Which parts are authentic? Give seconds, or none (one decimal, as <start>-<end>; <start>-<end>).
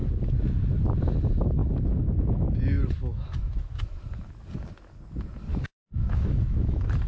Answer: 0.0-3.1; 3.8-5.5